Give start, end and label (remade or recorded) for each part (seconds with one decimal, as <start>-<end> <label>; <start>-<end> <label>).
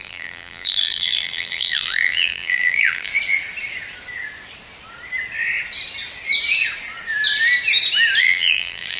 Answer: 0.0-3.1 remade; 3.1-8.2 recorded; 8.2-9.0 remade